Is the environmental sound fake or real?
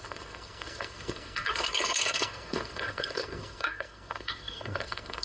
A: fake